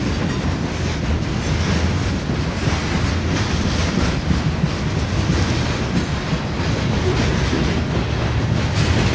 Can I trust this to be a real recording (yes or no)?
yes